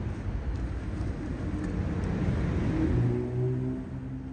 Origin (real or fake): real